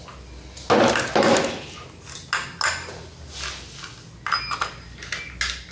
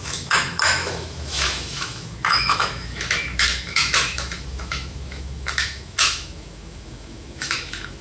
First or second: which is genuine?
first